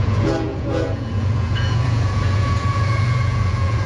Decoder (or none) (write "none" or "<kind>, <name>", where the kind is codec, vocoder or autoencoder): vocoder, Vocos